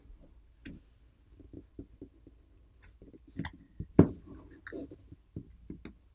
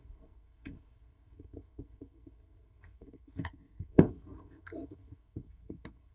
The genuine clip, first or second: first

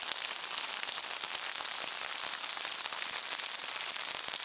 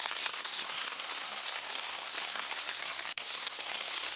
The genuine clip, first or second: first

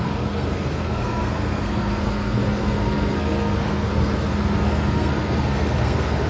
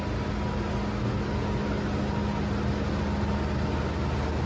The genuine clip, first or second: second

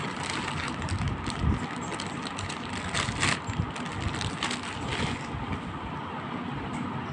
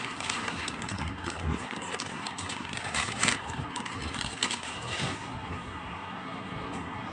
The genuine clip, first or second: first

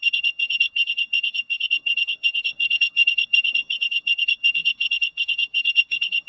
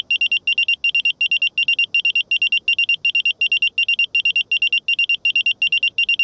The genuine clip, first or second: second